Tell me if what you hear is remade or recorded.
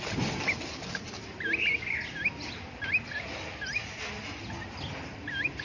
recorded